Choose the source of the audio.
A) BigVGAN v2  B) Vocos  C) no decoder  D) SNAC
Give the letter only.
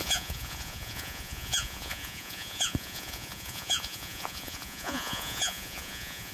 B